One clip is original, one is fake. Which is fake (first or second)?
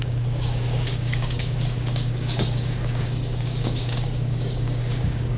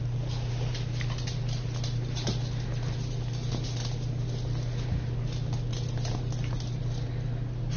first